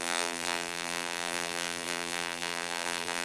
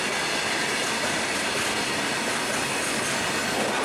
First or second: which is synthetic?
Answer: first